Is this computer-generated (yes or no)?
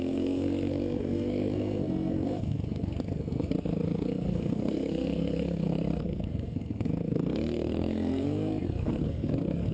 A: yes